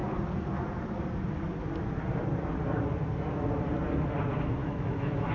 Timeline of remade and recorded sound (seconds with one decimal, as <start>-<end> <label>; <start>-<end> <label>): 0.0-4.6 recorded; 4.6-5.3 remade